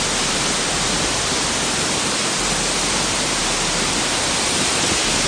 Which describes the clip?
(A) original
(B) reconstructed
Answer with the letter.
A